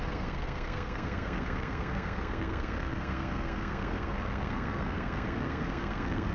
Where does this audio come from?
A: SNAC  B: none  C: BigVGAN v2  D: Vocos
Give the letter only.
A